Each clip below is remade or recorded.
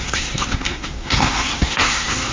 remade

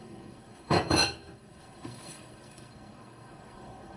remade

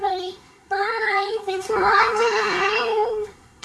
remade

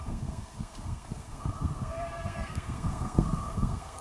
remade